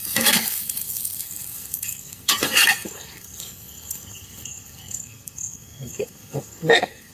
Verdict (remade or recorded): remade